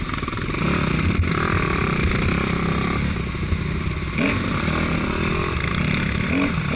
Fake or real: real